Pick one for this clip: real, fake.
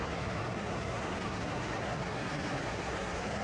fake